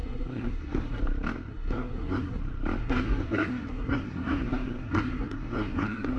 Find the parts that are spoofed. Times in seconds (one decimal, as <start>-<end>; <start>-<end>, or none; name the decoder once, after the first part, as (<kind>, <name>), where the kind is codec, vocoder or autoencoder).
0.0-1.0 (codec, SNAC); 1.5-2.4; 2.8-6.2